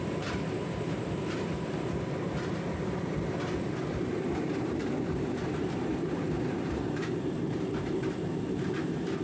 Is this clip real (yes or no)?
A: no